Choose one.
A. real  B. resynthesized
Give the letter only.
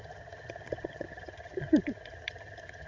B